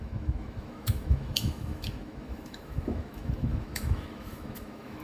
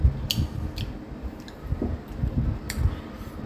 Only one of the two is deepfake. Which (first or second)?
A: first